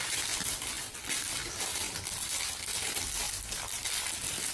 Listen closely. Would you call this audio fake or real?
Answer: real